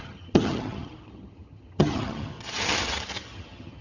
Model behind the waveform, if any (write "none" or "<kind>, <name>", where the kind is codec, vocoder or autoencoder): vocoder, HiFi-GAN